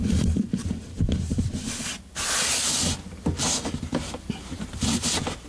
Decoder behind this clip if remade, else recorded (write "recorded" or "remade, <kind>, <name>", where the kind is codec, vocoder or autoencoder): recorded